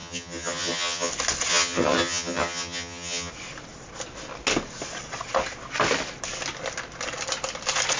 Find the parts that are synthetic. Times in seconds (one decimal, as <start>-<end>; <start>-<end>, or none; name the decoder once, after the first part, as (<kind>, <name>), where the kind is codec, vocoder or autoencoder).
0.0-1.1 (vocoder, HiFi-GAN); 1.5-3.3